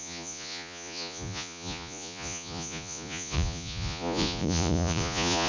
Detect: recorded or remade remade